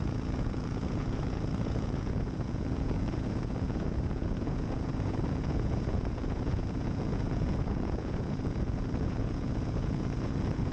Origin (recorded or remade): remade